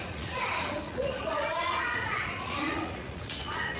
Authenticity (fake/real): fake